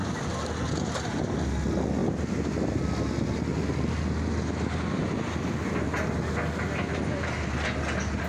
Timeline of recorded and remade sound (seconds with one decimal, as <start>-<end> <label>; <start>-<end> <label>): 0.0-8.3 recorded